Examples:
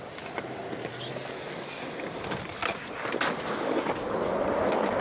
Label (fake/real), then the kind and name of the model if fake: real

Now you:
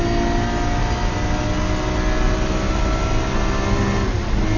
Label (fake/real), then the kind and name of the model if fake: real